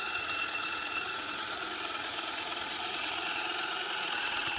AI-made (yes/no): yes